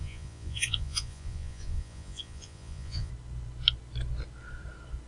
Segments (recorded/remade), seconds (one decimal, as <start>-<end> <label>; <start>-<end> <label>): 0.0-3.1 remade; 3.1-5.1 recorded